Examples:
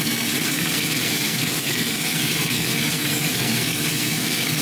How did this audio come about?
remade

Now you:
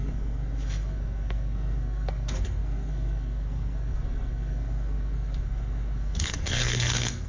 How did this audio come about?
remade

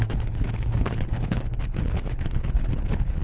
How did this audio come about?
remade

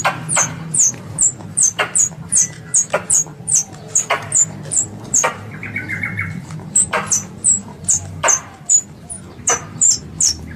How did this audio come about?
remade